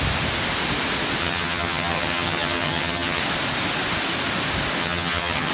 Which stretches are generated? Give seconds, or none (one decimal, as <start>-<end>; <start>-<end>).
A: 1.2-3.2; 4.8-5.5

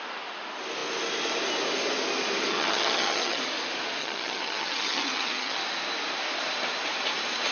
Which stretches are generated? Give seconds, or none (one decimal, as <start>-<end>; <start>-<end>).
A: 2.5-3.4; 4.0-5.6

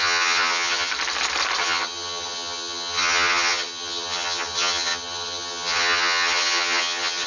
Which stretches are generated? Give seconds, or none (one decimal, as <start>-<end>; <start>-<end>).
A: 0.0-0.9; 1.6-7.3

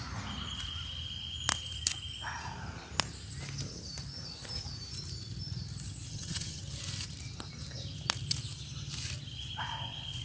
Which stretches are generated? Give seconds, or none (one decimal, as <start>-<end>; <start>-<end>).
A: 6.1-6.6

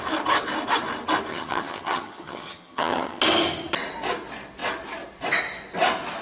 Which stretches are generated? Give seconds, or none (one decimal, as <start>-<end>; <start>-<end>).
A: 1.3-3.2

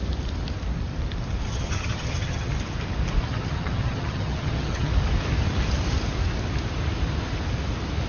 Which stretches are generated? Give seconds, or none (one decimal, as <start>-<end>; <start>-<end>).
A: 1.5-2.5; 3.2-4.9

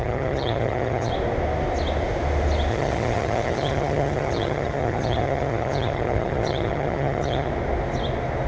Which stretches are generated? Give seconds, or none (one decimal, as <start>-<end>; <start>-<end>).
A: 0.0-1.1; 2.7-7.5